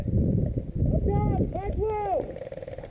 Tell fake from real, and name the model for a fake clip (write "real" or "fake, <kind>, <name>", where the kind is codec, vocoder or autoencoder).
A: real